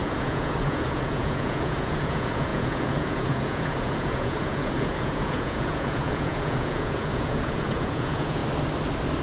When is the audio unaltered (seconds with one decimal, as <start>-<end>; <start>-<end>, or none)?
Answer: 8.4-9.2